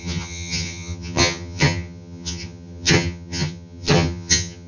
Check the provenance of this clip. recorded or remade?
remade